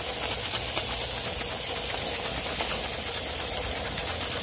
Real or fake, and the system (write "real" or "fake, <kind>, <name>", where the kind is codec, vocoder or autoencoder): real